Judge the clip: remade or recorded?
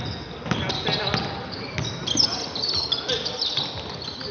recorded